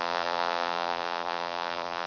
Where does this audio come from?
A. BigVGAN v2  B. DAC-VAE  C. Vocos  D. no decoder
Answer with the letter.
A